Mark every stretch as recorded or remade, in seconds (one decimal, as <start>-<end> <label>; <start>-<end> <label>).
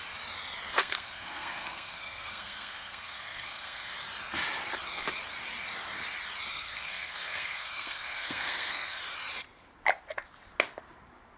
0.0-0.7 recorded; 0.7-3.9 remade; 3.9-6.5 recorded; 6.5-9.0 remade; 9.0-11.4 recorded